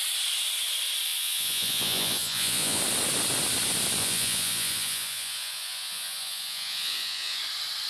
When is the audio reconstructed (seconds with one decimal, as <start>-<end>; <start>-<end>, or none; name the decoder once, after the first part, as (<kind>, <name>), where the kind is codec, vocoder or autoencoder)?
1.1-2.8 (vocoder, Vocos); 4.0-7.4